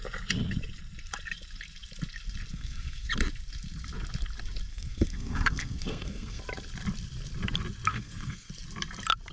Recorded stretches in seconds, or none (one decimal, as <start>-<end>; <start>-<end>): 0.0-2.5; 3.1-4.7; 6.4-7.9; 8.5-9.3